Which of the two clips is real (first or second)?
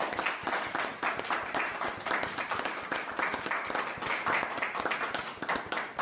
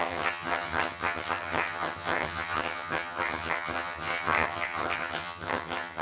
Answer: first